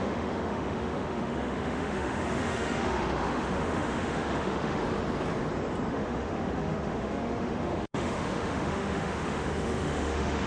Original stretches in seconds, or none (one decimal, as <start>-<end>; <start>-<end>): 4.8-5.9